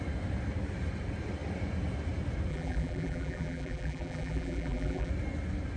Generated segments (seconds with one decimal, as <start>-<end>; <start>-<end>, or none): 2.5-5.1